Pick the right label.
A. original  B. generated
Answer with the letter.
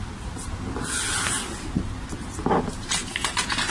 A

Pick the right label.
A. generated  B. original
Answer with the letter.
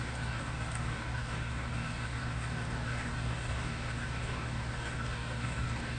A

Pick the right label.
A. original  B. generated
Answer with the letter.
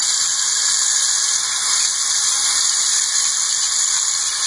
A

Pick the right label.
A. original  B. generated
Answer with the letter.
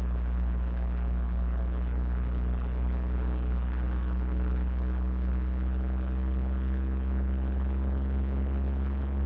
B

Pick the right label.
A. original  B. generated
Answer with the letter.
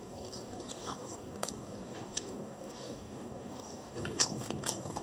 B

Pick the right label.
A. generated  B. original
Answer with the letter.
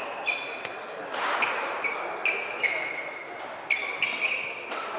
B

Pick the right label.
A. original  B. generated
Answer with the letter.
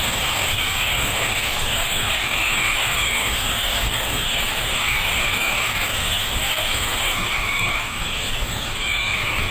B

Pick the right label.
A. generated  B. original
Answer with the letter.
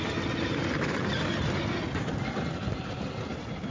B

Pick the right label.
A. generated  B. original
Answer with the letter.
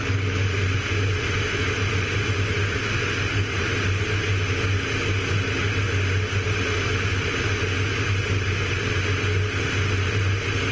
B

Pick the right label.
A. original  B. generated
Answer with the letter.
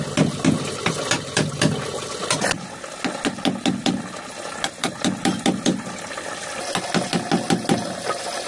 A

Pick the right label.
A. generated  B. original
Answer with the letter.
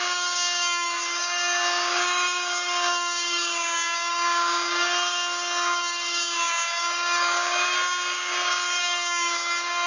A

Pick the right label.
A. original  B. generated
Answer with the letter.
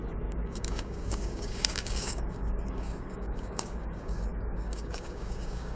B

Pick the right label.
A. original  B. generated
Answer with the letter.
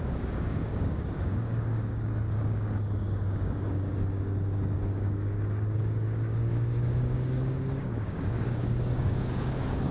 B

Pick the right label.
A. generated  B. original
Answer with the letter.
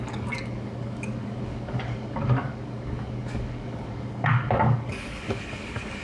A